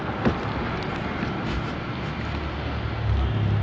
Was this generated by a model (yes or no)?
no